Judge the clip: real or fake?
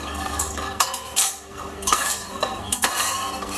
fake